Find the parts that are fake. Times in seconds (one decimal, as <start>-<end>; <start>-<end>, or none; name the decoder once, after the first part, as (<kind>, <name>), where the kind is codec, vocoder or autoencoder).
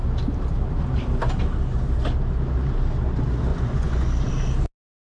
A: 3.5-4.3 (vocoder, Vocos)